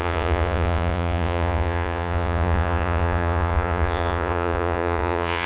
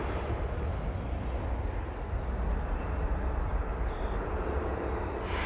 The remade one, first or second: first